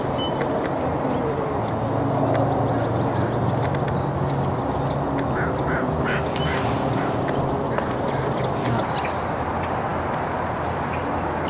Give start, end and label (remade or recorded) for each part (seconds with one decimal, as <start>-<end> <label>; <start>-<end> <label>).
0.0-11.5 recorded